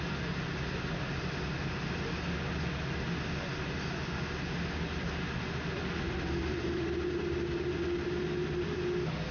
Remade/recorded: recorded